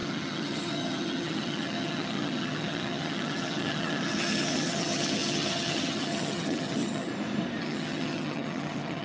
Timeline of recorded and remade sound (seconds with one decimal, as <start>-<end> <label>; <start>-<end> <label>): 0.0-7.1 remade; 7.1-7.6 recorded; 7.6-9.0 remade